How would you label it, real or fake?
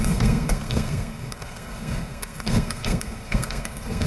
fake